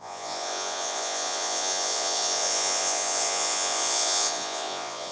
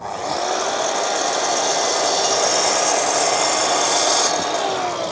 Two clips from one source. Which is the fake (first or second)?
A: first